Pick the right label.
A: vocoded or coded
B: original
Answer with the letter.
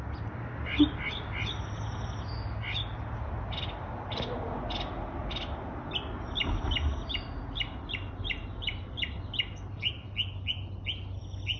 B